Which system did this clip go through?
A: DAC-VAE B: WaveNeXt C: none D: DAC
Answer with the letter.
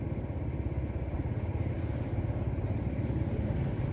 C